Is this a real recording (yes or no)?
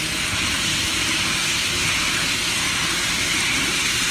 yes